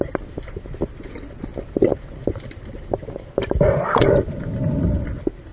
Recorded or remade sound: recorded